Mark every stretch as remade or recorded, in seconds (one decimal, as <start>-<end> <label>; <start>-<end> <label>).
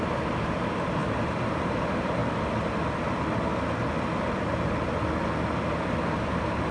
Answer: 0.0-2.2 remade; 2.2-6.2 recorded; 6.2-6.7 remade